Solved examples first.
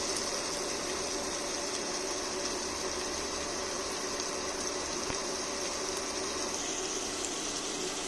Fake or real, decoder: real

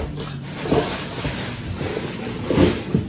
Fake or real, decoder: real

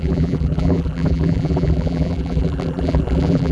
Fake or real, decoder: fake, vocoder, BigVGAN v2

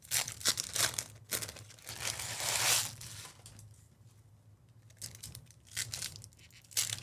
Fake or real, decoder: real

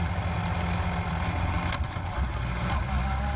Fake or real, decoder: real